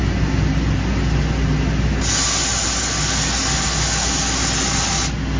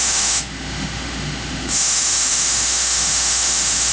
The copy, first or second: second